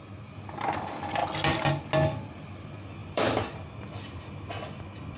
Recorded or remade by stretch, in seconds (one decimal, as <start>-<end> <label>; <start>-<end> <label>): 0.0-3.0 recorded; 3.0-3.6 remade; 3.6-5.2 recorded